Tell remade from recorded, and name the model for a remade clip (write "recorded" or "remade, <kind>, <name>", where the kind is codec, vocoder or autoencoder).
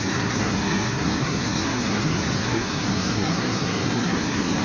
remade, codec, SNAC